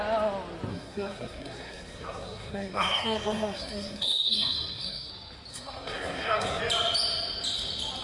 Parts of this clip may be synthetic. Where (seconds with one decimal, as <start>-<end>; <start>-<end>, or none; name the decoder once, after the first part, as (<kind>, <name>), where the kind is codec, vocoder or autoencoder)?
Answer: 0.7-5.1 (codec, SNAC); 5.5-6.6